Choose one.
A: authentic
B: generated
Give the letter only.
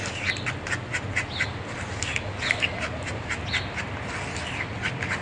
A